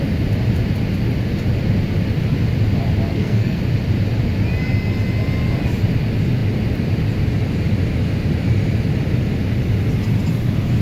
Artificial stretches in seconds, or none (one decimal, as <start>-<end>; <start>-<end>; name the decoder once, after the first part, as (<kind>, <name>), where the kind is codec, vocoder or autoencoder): 3.1-3.6 (codec, SNAC)